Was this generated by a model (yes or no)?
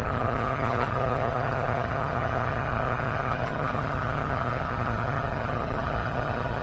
yes